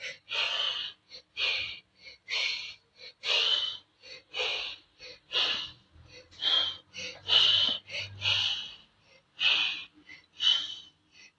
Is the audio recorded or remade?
recorded